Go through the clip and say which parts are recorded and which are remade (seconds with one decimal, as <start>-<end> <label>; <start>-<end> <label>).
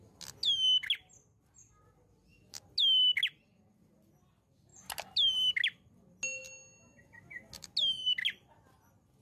0.0-9.2 recorded